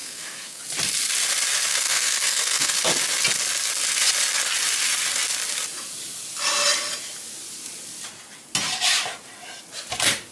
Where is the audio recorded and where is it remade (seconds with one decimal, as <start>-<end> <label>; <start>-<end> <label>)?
0.0-0.6 remade; 0.6-1.7 recorded; 1.7-2.7 remade; 2.7-10.3 recorded

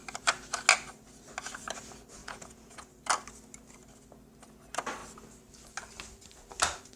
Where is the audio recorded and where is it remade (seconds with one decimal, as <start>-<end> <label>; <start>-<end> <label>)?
0.0-2.2 recorded; 2.2-2.9 remade; 2.9-7.0 recorded

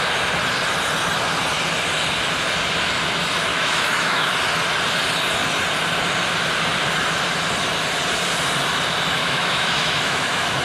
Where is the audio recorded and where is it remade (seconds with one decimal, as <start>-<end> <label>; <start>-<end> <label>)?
0.0-3.5 recorded; 3.5-4.3 remade; 4.3-9.2 recorded; 9.2-10.6 remade

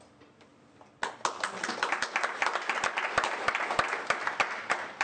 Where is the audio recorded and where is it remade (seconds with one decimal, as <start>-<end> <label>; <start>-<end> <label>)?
0.0-5.0 recorded

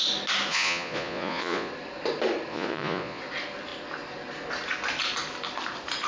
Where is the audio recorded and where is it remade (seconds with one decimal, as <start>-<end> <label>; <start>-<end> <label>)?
0.0-0.5 recorded; 0.5-1.7 remade; 1.7-2.5 recorded; 2.5-3.2 remade; 3.2-6.1 recorded

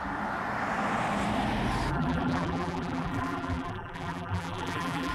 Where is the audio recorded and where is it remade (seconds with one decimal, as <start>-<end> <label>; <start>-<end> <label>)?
0.0-1.9 recorded; 1.9-5.1 remade

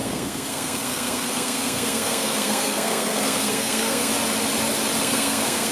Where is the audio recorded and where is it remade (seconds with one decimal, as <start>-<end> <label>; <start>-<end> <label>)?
0.0-4.1 remade; 4.1-5.0 recorded; 5.0-5.7 remade